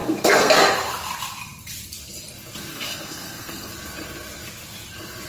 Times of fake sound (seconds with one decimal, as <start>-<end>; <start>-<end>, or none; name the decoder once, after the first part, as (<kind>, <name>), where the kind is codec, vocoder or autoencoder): 0.0-0.6 (codec, SNAC); 2.7-3.7